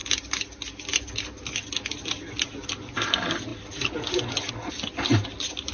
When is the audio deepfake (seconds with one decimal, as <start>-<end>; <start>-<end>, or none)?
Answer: none